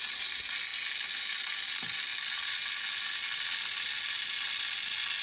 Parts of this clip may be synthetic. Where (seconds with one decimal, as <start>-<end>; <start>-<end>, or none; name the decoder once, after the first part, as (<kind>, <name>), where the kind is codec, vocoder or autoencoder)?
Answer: none